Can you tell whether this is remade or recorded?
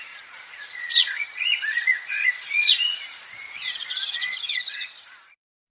remade